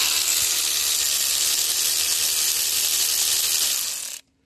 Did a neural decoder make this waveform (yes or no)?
no